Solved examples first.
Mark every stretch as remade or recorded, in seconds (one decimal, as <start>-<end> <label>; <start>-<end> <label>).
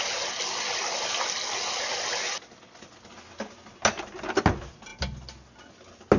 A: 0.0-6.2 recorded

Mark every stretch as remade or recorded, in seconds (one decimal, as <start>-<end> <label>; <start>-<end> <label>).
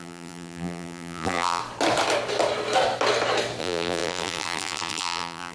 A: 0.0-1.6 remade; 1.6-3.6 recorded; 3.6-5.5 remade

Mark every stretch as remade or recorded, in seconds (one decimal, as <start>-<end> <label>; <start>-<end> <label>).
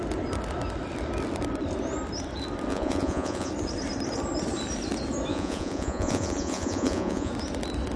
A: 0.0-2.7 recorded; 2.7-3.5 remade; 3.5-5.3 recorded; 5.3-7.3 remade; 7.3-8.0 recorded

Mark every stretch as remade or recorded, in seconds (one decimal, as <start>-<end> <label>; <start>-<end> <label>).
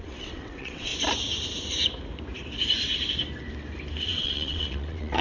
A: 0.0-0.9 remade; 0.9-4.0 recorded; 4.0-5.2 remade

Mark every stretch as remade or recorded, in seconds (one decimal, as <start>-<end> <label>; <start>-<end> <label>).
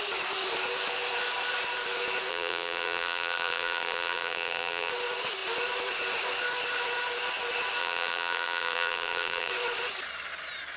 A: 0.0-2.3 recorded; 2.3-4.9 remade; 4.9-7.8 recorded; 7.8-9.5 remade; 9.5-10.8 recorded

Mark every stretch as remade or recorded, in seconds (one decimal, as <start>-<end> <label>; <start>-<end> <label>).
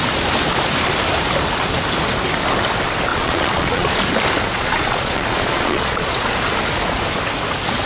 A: 0.0-3.1 recorded; 3.1-4.0 remade; 4.0-4.5 recorded; 4.5-6.3 remade; 6.3-7.9 recorded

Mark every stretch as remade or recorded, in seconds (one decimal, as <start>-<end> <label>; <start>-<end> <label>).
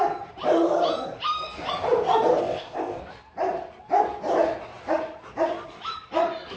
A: 0.0-2.4 recorded; 2.4-3.0 remade; 3.0-6.6 recorded